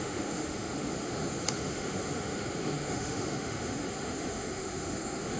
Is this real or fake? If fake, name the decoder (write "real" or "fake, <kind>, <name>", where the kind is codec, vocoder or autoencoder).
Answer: fake, autoencoder, DAC-VAE